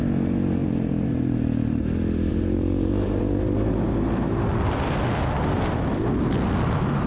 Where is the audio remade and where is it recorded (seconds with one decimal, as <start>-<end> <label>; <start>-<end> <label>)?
0.0-0.6 recorded; 0.6-1.8 remade; 1.8-2.3 recorded; 2.3-3.2 remade; 3.2-7.1 recorded